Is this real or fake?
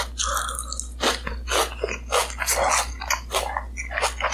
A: real